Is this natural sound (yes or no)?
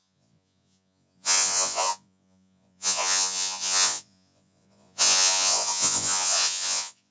no